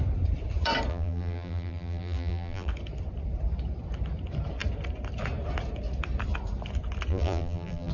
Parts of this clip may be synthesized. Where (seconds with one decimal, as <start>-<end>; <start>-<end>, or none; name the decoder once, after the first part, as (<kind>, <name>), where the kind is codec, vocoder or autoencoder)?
0.9-2.7 (vocoder, BigVGAN v2); 7.1-7.9